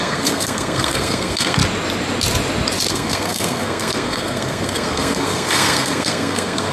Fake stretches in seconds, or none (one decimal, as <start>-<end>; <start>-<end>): 0.0-1.6; 2.9-6.7